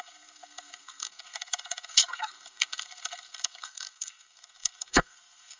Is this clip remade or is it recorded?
remade